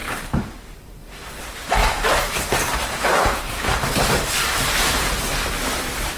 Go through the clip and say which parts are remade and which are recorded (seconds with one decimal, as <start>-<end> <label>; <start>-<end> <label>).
0.0-1.4 remade; 1.4-1.8 recorded; 1.8-5.5 remade; 5.5-6.2 recorded